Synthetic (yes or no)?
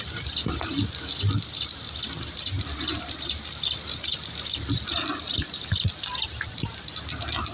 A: no